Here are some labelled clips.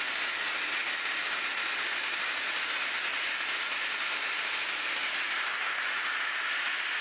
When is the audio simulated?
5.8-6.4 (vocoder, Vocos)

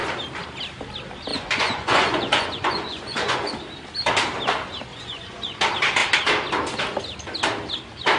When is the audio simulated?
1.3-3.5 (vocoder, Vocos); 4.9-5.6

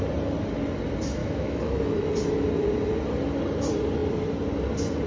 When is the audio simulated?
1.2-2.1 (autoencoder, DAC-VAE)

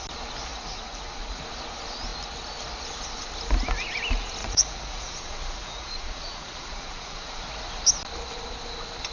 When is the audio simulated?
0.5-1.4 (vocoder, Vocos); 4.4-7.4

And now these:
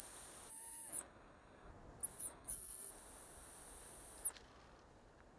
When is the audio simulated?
0.5-1.7 (codec, DAC); 2.2-2.9